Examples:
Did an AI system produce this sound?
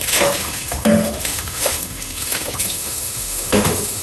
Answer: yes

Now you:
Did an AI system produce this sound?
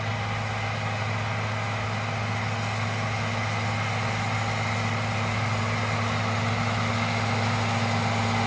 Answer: no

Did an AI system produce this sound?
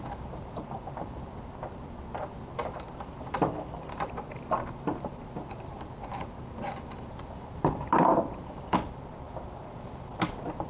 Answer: yes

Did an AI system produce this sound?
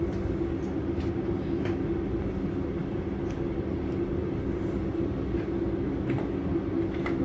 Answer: no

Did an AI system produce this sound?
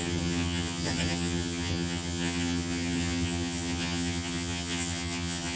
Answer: yes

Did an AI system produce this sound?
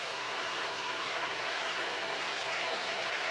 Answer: yes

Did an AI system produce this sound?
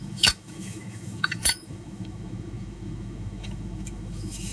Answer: yes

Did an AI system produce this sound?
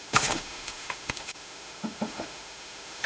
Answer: yes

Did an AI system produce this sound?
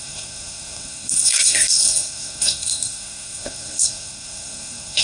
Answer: yes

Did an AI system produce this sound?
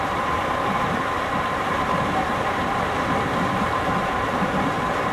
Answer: yes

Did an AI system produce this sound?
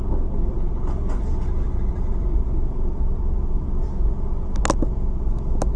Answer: no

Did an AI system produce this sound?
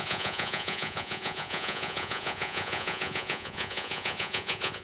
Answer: yes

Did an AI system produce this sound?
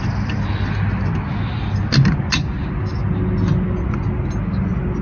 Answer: no